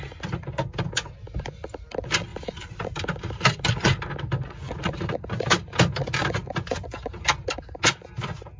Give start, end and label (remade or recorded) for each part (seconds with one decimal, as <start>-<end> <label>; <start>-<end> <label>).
0.0-2.3 recorded; 2.3-3.7 remade; 3.7-8.6 recorded